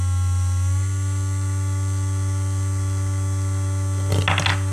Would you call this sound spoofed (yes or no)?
no